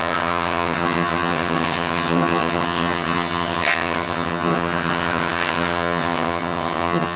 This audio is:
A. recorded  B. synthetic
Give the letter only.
B